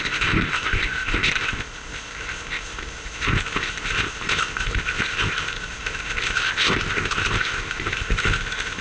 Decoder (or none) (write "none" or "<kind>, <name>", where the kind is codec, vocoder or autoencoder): codec, ZipCodec